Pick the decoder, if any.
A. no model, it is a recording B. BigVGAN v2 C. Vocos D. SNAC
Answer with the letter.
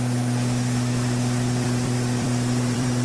B